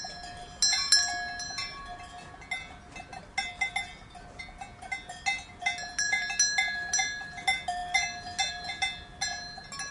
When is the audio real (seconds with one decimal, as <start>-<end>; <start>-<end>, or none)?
0.0-9.9